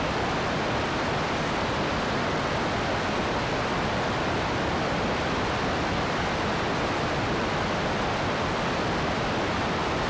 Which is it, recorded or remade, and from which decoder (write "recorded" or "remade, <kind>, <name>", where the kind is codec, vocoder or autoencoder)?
recorded